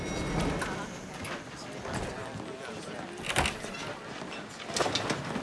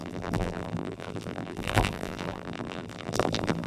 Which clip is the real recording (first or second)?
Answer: first